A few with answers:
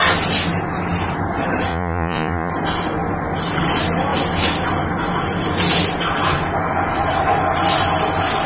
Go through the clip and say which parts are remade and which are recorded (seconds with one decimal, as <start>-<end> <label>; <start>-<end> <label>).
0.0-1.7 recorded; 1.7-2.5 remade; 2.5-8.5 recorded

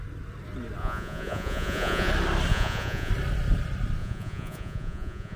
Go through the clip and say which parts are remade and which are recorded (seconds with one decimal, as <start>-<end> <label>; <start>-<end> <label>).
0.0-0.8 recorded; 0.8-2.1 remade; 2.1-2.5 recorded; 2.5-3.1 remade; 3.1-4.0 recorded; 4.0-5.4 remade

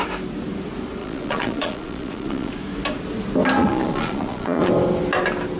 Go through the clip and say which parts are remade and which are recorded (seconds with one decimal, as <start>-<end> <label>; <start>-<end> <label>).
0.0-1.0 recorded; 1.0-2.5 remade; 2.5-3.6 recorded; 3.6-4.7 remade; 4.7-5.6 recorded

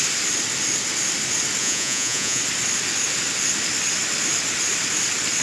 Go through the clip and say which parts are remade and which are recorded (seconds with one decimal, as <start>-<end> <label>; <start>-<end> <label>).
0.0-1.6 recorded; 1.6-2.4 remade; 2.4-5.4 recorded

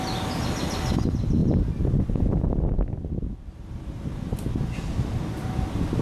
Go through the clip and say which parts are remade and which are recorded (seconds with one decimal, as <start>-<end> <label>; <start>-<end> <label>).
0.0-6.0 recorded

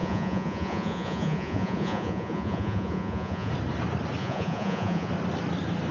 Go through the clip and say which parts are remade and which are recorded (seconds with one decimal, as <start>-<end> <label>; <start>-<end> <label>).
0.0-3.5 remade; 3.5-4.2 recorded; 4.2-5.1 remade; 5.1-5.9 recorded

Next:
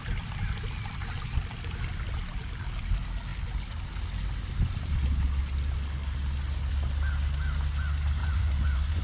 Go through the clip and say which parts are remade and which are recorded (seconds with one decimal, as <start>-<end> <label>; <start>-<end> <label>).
0.0-8.2 recorded; 8.2-9.0 remade